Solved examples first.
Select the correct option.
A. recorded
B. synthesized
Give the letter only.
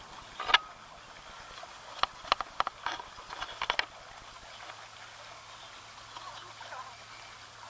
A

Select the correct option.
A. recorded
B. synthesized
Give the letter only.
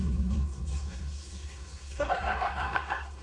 B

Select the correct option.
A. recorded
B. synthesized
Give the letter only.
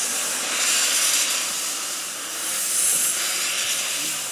A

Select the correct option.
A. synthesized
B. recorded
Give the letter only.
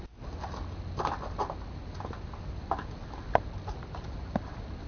B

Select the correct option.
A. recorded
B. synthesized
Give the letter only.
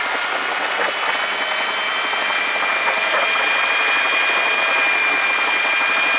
A